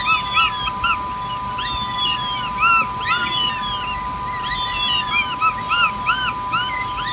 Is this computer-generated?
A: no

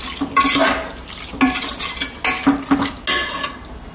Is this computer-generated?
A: no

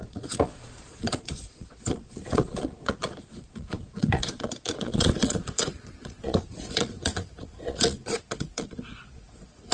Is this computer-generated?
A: yes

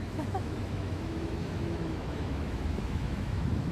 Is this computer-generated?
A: yes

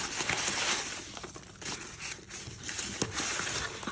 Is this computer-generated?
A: no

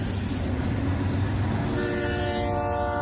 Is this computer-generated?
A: no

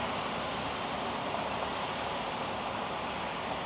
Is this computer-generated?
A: no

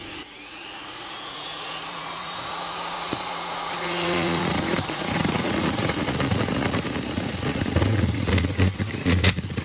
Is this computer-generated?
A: yes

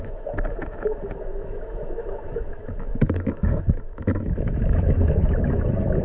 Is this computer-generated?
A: yes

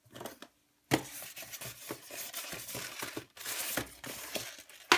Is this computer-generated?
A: no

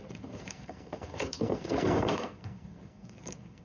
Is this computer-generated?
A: yes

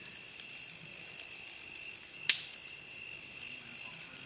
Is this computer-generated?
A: no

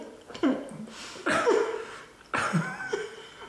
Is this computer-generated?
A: no